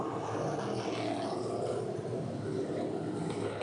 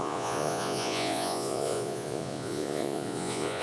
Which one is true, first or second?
first